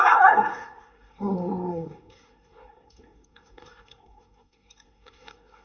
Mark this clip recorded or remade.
remade